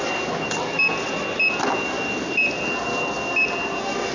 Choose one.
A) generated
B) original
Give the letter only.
B